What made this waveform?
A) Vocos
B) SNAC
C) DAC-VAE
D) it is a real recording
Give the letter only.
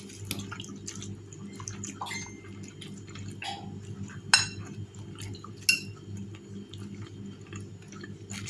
D